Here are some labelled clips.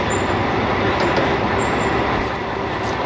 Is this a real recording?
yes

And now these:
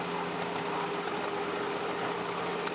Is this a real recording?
yes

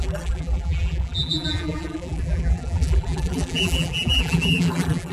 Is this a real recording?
no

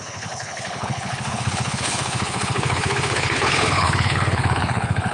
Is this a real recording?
no